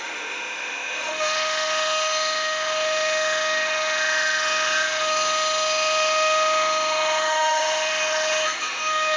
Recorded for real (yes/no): no